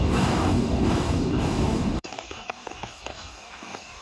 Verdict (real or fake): fake